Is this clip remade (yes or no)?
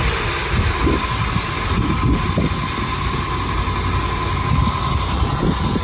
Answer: no